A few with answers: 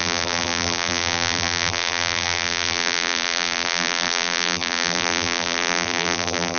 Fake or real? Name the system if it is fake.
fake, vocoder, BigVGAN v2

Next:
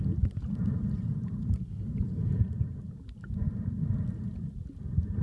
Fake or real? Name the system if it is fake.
real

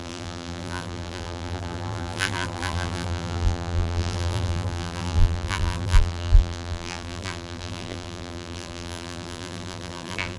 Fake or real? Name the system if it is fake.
fake, vocoder, BigVGAN v2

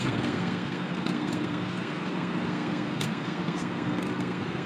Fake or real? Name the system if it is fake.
fake, codec, SNAC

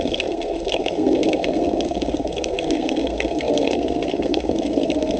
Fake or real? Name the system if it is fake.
fake, codec, SNAC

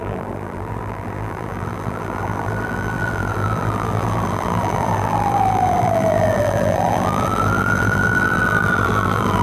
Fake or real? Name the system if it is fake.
fake, vocoder, BigVGAN v2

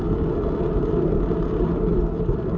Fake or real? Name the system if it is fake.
real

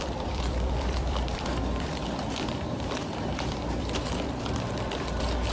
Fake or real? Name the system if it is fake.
fake, vocoder, BigVGAN v2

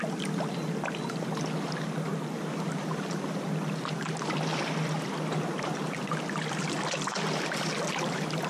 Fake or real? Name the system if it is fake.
real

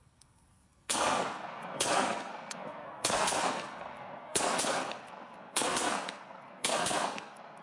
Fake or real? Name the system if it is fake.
fake, codec, SNAC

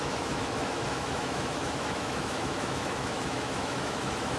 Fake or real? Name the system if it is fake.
fake, autoencoder, DAC-VAE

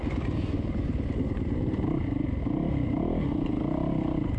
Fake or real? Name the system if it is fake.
real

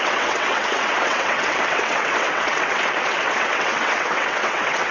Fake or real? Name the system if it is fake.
fake, vocoder, WaveNeXt